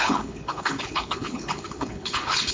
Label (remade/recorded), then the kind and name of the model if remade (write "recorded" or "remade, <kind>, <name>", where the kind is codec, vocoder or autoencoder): remade, codec, HILCodec